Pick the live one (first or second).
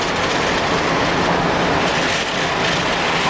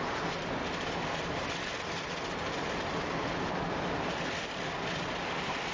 first